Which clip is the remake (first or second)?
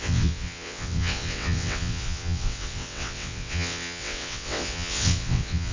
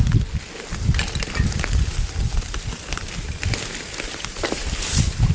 first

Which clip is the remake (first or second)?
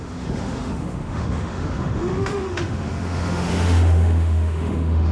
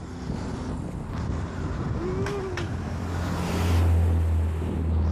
first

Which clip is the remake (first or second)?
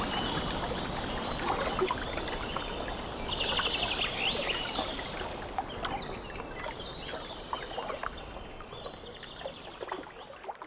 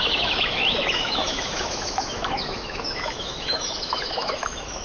second